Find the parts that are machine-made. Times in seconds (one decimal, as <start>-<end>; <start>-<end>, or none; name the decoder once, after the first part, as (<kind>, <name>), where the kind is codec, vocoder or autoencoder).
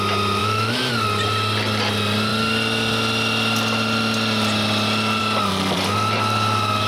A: 0.4-0.9 (autoencoder, DAC-VAE)